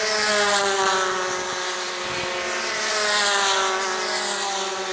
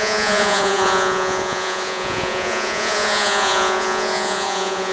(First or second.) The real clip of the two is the first